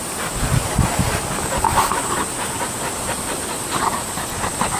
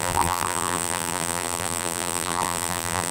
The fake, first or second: second